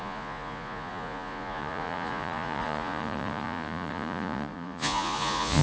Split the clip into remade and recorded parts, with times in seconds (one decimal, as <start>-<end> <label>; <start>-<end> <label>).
0.0-5.6 remade